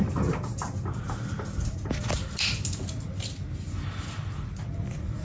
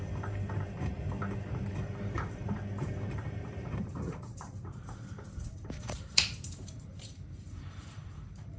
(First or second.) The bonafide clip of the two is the first